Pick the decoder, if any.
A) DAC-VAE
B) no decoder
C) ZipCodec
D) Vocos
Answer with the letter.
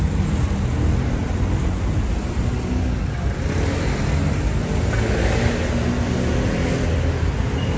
B